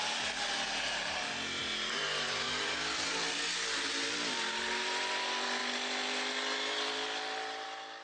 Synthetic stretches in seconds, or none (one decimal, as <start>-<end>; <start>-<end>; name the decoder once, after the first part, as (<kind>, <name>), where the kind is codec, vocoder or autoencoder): none

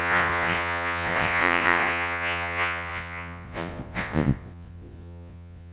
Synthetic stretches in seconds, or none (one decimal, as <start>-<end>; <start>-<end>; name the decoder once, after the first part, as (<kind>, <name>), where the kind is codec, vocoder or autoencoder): 0.0-5.7 (vocoder, Vocos)

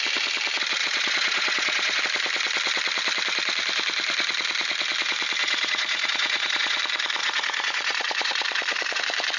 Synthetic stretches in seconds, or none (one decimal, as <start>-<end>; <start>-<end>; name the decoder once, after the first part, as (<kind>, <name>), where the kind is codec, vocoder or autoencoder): 0.8-2.0 (vocoder, Vocos); 5.4-6.8; 7.2-9.0

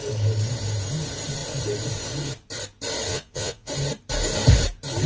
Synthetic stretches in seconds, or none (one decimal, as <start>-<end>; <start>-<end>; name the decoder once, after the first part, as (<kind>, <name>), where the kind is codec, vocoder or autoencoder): 3.1-3.7 (vocoder, Vocos)

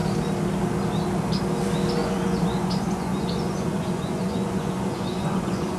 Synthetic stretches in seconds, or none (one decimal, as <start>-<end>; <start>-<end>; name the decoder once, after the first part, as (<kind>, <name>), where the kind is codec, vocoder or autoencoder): 2.0-5.8 (vocoder, Vocos)

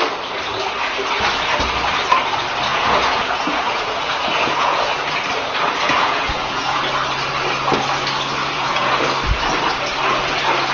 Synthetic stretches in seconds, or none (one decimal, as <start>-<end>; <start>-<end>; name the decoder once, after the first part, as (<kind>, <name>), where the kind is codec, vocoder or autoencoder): 2.7-4.9 (vocoder, Vocos); 5.9-6.8; 8.4-9.0